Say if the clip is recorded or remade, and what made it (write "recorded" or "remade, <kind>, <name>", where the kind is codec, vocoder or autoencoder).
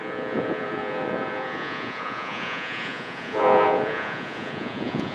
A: remade, vocoder, Vocos